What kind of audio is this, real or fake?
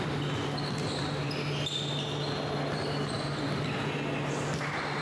real